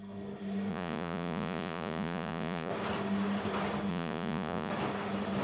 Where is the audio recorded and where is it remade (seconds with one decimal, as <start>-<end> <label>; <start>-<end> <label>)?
0.0-0.7 recorded; 0.7-2.7 remade; 2.7-3.9 recorded; 3.9-4.7 remade; 4.7-5.4 recorded